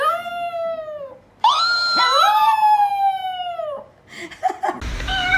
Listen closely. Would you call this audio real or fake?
real